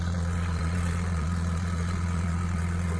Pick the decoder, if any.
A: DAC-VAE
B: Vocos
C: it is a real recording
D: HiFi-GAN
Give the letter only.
B